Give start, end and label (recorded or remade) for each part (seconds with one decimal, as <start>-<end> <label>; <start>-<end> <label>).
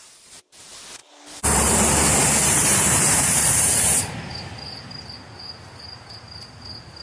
0.0-1.0 recorded; 1.0-1.7 remade; 1.7-2.4 recorded; 2.4-3.8 remade; 3.8-7.0 recorded